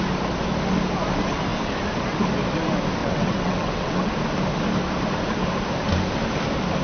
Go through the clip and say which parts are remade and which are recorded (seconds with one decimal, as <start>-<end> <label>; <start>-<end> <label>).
0.0-3.0 recorded; 3.0-4.1 remade; 4.1-6.8 recorded